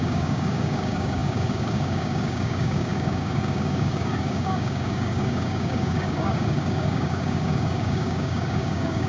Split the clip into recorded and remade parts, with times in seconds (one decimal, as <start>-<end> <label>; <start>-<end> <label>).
0.0-9.1 remade